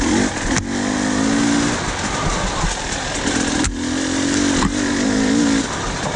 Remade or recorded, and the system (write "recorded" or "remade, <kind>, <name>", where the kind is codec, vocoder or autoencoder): recorded